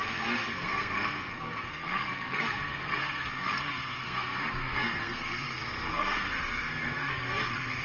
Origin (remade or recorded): remade